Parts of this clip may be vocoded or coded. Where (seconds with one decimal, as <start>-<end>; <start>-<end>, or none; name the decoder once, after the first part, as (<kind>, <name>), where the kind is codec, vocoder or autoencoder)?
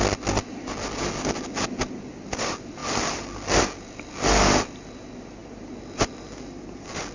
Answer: none